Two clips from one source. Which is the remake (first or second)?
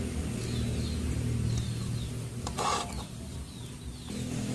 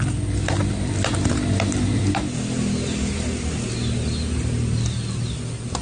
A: second